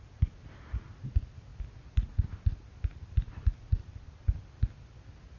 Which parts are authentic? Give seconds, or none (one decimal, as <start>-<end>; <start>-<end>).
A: 0.0-5.4